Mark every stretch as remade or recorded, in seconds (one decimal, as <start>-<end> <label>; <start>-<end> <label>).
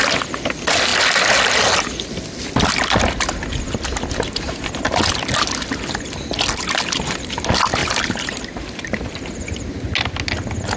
0.0-7.8 recorded; 7.8-9.7 remade; 9.7-10.8 recorded